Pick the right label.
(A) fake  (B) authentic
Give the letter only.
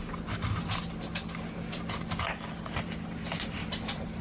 B